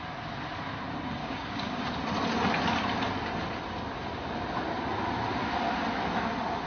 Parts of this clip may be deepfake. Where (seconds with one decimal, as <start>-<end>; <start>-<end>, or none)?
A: 1.2-1.8